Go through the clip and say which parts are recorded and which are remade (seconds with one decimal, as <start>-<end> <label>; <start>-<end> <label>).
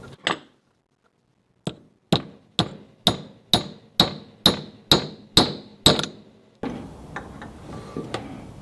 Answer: 0.0-8.6 recorded